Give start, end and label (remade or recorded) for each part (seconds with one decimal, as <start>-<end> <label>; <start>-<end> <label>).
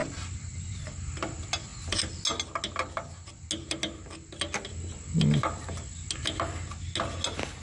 0.0-0.8 remade; 0.8-7.6 recorded